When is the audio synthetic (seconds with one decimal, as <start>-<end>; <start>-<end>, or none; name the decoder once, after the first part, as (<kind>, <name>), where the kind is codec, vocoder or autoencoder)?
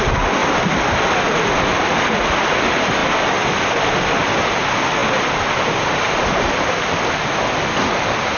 none